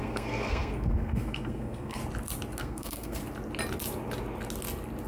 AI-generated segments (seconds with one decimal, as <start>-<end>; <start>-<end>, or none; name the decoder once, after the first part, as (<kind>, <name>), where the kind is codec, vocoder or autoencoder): 0.0-2.0 (codec, SNAC); 2.6-3.2